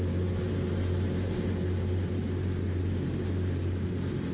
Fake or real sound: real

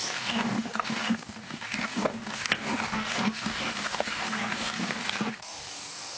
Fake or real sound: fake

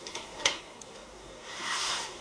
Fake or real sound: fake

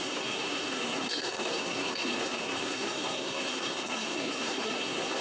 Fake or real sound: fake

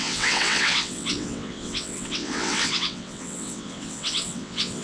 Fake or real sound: fake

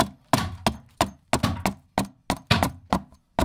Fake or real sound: real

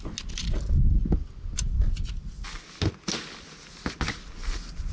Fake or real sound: real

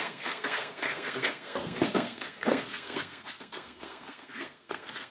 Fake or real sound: fake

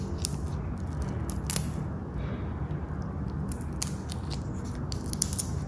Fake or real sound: real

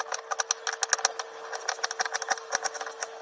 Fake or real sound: real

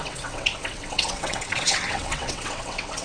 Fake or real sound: fake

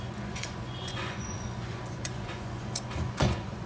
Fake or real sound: fake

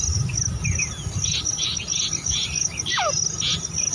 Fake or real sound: real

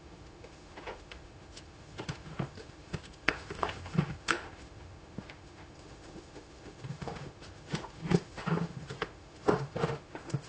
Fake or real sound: fake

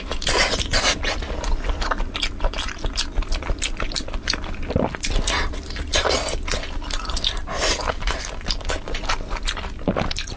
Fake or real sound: real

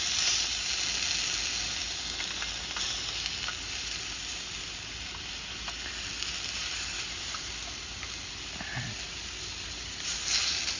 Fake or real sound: real